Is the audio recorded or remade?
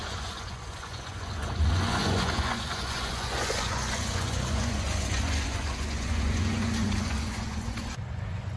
remade